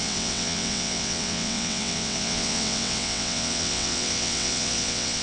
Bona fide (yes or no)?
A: no